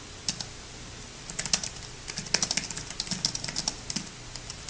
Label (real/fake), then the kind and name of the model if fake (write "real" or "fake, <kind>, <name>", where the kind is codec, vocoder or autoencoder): real